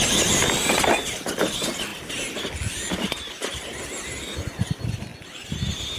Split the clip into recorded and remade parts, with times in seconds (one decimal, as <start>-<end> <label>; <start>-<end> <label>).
0.0-6.0 recorded